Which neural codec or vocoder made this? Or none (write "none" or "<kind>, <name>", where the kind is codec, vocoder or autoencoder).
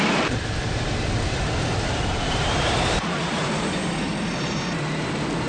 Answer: vocoder, BigVGAN v2